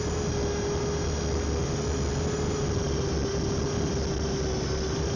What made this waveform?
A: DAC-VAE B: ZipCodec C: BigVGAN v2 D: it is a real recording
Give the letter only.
D